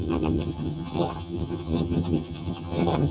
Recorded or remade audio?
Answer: remade